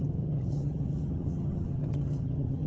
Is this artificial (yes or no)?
yes